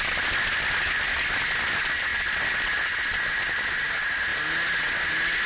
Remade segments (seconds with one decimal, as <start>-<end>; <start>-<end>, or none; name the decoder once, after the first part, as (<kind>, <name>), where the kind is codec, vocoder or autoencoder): none